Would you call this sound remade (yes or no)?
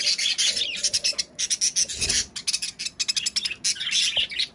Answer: no